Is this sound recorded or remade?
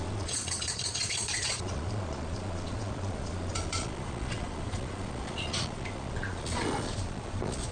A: remade